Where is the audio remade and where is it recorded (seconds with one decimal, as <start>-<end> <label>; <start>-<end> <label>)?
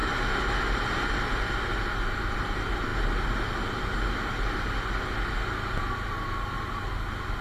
0.0-7.4 recorded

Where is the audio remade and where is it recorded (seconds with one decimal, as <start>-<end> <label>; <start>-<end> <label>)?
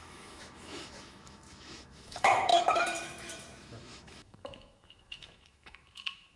0.0-6.4 remade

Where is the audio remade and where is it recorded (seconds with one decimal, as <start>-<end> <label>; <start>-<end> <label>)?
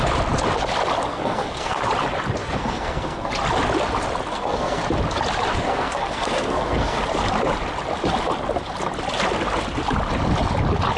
0.0-1.1 recorded; 1.1-1.8 remade; 1.8-2.4 recorded; 2.4-3.3 remade; 3.3-4.3 recorded; 4.3-4.8 remade; 4.8-5.5 recorded; 5.5-7.0 remade; 7.0-11.0 recorded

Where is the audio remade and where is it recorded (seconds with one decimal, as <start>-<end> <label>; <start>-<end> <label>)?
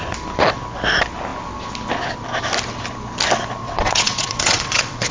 0.0-3.6 recorded; 3.6-5.1 remade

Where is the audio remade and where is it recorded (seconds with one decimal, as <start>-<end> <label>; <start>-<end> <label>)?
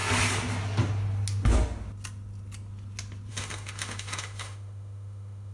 0.0-3.3 recorded; 3.3-5.5 remade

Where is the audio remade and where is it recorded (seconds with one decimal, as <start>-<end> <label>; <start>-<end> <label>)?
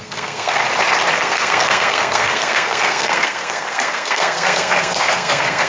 0.0-0.6 remade; 0.6-1.1 recorded; 1.1-5.7 remade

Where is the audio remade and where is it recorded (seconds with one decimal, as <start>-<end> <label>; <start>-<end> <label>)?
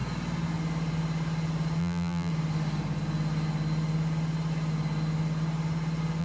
0.0-1.8 recorded; 1.8-2.3 remade; 2.3-6.2 recorded